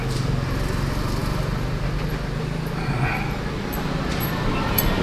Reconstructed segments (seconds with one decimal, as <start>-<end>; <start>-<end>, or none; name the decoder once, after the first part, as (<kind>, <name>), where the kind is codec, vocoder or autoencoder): none